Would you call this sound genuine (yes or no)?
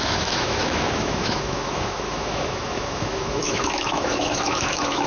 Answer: no